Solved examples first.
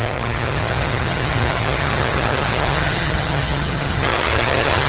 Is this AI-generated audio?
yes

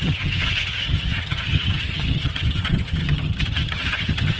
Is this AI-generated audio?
yes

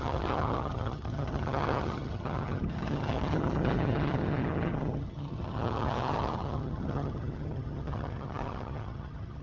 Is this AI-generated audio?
yes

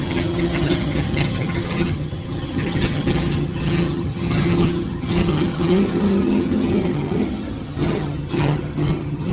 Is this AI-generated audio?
yes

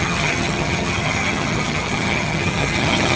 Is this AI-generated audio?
yes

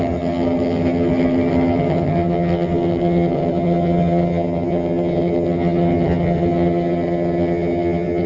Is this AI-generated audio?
yes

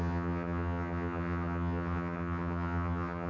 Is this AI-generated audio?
yes